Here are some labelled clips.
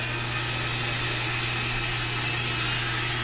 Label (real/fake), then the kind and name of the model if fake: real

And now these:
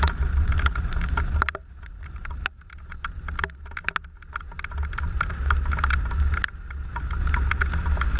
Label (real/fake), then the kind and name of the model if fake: real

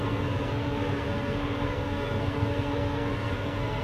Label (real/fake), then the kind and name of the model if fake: fake, codec, SNAC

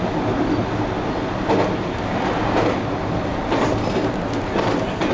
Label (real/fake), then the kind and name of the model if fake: real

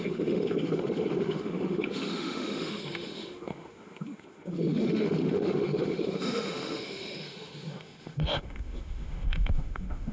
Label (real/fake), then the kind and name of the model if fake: fake, autoencoder, DAC-VAE